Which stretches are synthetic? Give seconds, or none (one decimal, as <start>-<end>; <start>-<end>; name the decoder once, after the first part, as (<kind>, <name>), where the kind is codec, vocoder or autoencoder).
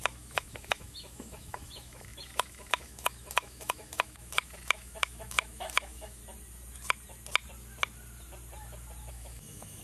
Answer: 0.0-6.2 (autoencoder, DAC-VAE); 9.1-9.8